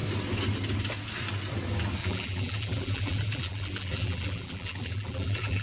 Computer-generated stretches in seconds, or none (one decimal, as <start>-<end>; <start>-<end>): 2.0-5.6